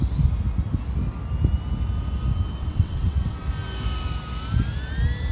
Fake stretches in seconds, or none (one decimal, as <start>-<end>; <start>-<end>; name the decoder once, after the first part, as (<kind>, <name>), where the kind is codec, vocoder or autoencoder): 2.6-3.5 (vocoder, WaveNeXt)